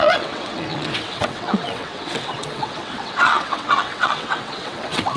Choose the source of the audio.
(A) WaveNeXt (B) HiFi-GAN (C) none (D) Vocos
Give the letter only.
A